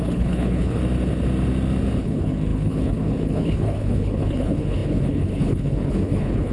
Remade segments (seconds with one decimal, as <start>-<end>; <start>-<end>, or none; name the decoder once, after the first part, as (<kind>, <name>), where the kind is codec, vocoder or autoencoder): 0.0-0.8 (codec, HILCodec); 2.0-6.5